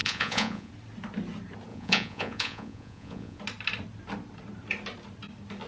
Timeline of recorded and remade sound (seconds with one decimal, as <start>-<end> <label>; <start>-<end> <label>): 0.0-0.7 remade; 0.7-1.7 recorded; 1.7-3.4 remade; 3.4-5.7 recorded